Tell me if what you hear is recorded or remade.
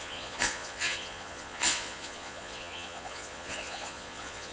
remade